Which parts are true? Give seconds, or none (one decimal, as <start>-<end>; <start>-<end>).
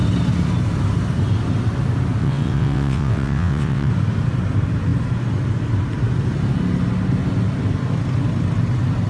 0.0-2.2; 3.9-9.1